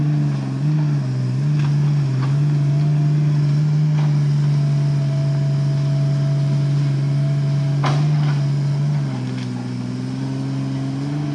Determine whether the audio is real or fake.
real